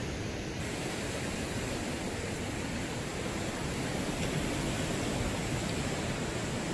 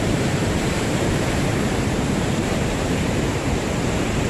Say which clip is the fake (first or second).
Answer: second